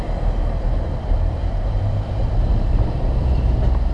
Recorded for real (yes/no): no